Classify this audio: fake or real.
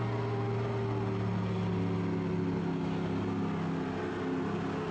real